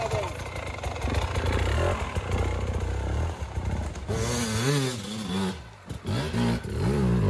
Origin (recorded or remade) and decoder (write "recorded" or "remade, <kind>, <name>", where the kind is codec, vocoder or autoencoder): recorded